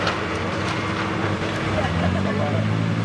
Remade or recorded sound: recorded